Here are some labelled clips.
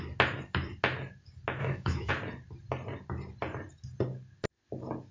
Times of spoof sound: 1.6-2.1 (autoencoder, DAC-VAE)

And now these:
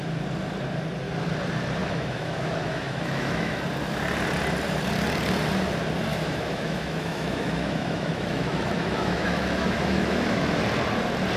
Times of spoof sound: 1.8-3.6 (autoencoder, DAC-VAE); 6.1-10.6

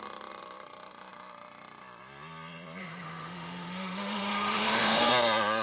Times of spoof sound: 2.8-5.1 (autoencoder, DAC-VAE)